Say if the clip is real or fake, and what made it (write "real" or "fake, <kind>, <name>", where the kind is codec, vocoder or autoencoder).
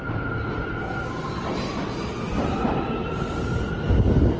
real